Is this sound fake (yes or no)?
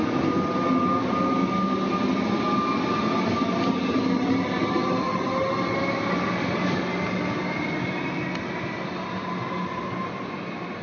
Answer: no